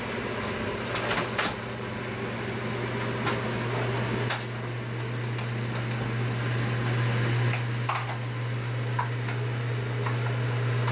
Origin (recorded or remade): recorded